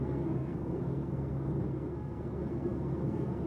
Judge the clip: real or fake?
fake